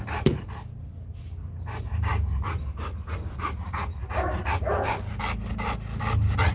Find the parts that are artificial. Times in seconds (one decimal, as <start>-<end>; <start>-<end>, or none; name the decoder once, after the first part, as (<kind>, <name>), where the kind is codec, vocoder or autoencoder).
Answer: none